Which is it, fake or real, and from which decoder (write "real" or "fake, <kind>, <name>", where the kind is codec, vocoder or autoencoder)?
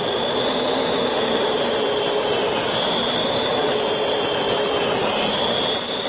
fake, vocoder, BigVGAN v2